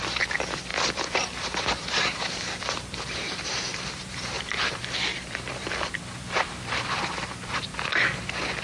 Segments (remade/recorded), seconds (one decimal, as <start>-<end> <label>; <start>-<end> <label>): 0.0-7.7 remade; 7.7-8.6 recorded